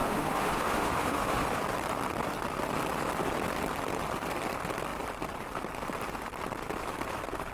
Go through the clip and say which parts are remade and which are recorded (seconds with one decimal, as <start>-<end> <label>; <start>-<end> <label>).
0.0-1.6 remade; 1.6-7.5 recorded